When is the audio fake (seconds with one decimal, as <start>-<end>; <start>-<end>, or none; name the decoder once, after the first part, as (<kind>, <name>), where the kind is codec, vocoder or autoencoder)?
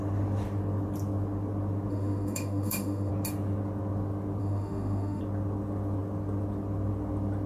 1.9-3.1 (autoencoder, DAC-VAE); 4.4-5.2